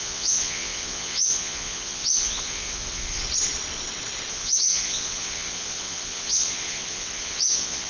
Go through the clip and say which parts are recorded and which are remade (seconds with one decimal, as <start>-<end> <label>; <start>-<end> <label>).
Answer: 0.0-3.2 remade; 3.2-4.3 recorded; 4.3-7.9 remade